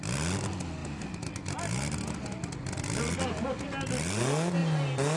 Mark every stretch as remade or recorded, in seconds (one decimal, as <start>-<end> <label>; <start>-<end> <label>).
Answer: 0.0-5.2 recorded